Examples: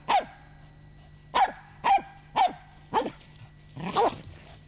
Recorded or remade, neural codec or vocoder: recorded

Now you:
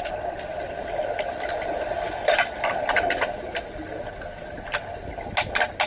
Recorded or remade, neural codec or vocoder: recorded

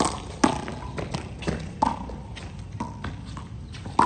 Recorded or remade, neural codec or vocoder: recorded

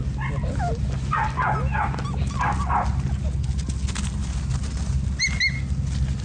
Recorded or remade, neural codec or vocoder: recorded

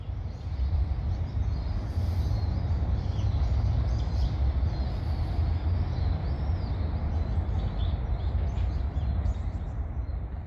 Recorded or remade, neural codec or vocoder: recorded